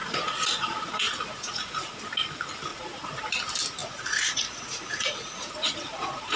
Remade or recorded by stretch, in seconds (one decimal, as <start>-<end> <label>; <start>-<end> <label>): 0.0-2.0 remade; 2.0-2.7 recorded; 2.7-3.2 remade; 3.2-3.8 recorded; 3.8-6.4 remade